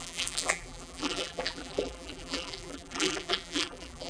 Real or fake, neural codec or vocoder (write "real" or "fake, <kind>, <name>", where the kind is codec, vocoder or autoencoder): fake, vocoder, BigVGAN v2